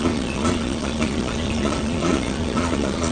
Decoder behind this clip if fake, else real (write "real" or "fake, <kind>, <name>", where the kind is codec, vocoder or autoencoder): fake, vocoder, Vocos